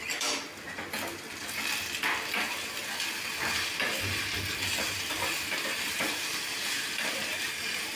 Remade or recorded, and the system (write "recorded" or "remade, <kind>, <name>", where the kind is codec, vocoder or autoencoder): recorded